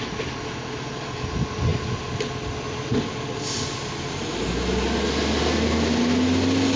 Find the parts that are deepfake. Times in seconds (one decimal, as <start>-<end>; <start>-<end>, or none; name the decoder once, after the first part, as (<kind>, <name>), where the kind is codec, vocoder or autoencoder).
none